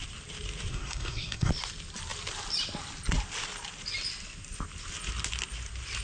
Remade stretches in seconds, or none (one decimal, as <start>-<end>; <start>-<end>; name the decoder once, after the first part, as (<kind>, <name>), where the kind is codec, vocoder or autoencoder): 0.7-1.5 (codec, SNAC)